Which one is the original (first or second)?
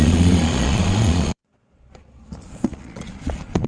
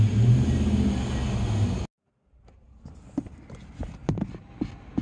second